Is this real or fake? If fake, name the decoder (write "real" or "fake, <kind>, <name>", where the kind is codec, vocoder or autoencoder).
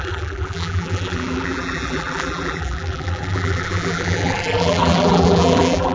fake, vocoder, BigVGAN v2